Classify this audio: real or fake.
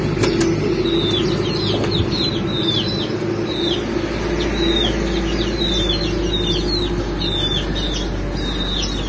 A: real